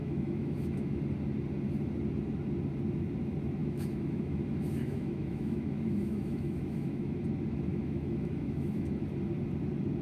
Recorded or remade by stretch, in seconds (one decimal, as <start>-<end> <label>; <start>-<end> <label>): 0.0-1.0 remade; 1.0-3.6 recorded; 3.6-7.2 remade; 7.2-7.7 recorded; 7.7-9.0 remade; 9.0-10.0 recorded